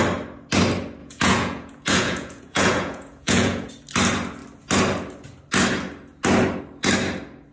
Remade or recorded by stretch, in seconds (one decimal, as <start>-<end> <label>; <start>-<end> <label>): 0.0-1.0 recorded; 1.0-3.7 remade; 3.7-7.5 recorded